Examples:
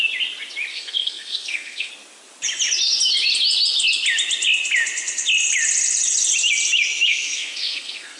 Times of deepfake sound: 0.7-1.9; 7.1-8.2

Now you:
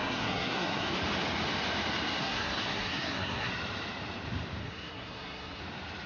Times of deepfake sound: 0.0-0.9; 2.2-3.5; 4.6-5.6

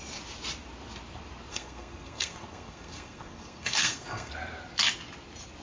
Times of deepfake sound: 1.5-4.3

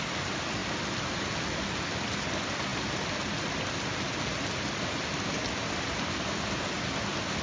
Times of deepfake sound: none